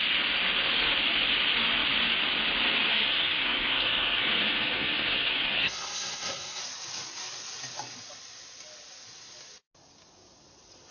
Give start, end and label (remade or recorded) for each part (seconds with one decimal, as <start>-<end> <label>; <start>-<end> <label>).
0.0-2.9 recorded; 2.9-6.6 remade; 6.6-10.9 recorded